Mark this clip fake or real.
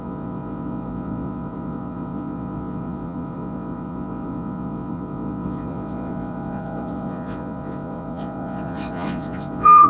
fake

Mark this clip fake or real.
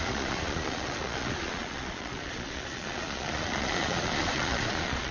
fake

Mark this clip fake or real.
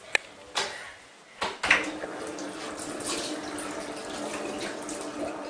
real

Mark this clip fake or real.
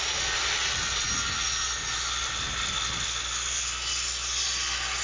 real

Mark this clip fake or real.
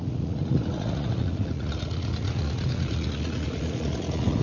fake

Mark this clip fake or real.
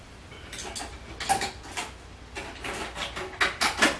real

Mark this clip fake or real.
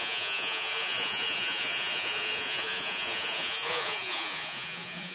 fake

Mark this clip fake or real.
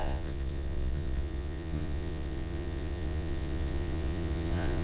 fake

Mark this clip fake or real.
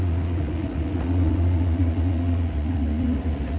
fake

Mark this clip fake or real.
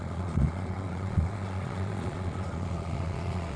fake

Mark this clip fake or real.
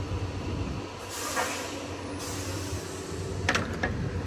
real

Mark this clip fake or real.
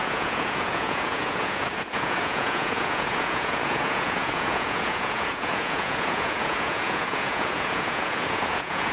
fake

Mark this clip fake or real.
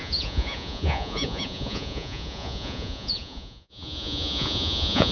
fake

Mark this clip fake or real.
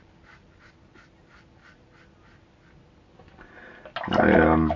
real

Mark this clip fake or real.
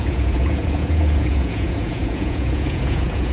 fake